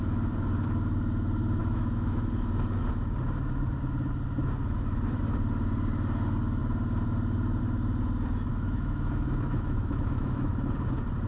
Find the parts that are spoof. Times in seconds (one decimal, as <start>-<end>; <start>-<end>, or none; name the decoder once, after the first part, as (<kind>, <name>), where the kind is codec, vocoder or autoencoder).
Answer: 1.6-2.3 (autoencoder, DAC-VAE); 4.6-5.2; 8.5-10.7